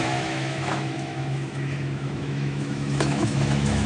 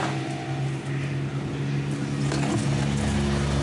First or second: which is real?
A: second